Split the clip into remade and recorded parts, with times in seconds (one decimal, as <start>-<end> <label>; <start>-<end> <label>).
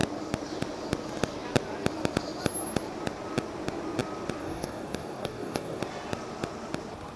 0.0-4.4 recorded; 4.4-5.8 remade; 5.8-7.2 recorded